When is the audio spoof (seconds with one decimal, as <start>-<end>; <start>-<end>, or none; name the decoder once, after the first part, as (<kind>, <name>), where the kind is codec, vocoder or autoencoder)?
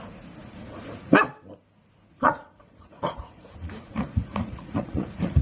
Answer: 0.4-1.2 (vocoder, Vocos); 2.1-5.4